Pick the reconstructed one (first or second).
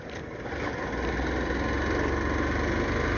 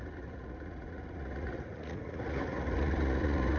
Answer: second